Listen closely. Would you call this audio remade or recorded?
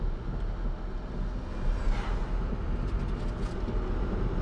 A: recorded